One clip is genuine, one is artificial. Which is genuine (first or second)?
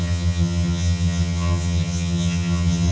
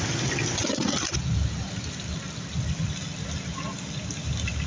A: second